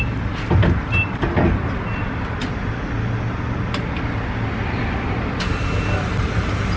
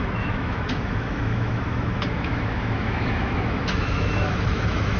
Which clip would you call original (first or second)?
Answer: first